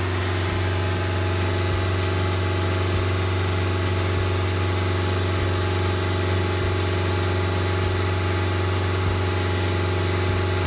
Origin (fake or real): real